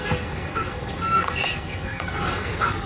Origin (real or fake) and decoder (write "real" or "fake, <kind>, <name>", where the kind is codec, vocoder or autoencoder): fake, codec, SNAC